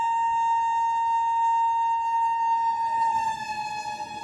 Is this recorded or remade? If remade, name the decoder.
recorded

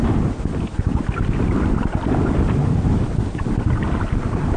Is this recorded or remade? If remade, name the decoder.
recorded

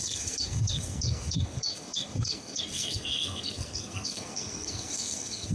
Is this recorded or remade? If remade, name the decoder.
remade, codec, SNAC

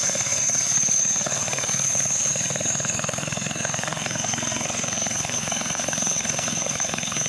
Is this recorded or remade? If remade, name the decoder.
remade, codec, SNAC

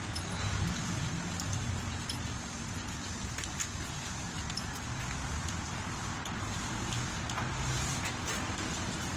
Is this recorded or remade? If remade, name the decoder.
recorded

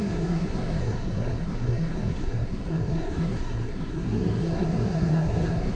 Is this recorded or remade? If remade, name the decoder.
remade, codec, SNAC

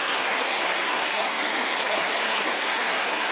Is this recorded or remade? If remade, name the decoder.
remade, codec, SNAC